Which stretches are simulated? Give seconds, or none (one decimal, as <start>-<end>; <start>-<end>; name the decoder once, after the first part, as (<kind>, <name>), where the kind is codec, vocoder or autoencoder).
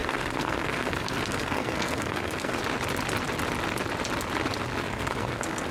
0.0-2.6 (codec, SNAC); 4.8-5.7